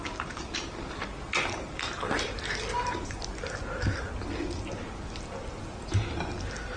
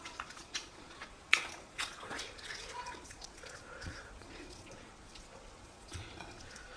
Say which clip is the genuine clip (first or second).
first